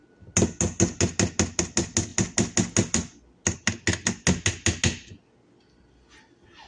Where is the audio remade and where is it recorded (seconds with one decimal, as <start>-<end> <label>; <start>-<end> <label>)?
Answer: 0.0-6.7 recorded